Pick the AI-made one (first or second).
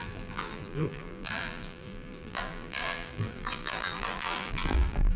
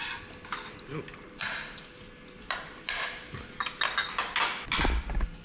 first